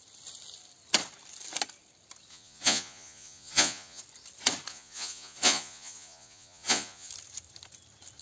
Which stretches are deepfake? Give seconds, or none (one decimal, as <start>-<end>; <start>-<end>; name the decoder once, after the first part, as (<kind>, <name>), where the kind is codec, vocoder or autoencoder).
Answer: 2.3-4.0 (vocoder, Vocos); 4.7-7.1